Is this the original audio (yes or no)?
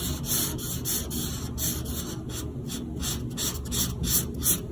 yes